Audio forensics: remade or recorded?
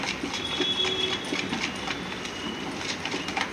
recorded